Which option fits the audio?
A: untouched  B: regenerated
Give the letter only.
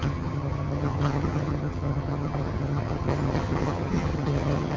B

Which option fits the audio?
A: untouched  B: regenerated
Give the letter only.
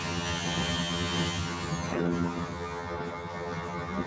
B